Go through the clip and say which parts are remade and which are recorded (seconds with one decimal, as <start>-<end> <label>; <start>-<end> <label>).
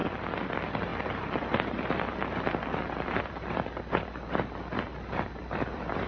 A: 0.0-0.5 recorded; 0.5-6.1 remade